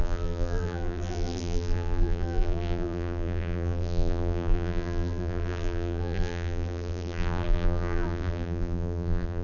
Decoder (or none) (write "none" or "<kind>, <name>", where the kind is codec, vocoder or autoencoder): vocoder, BigVGAN v2